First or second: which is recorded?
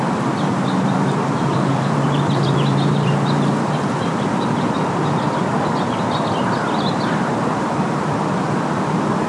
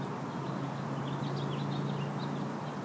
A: second